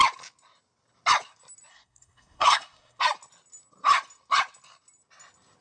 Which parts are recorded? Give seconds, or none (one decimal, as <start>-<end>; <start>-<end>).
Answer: 0.0-1.7; 3.0-5.6